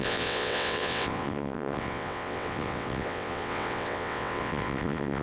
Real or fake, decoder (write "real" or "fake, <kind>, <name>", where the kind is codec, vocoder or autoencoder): fake, vocoder, WaveNeXt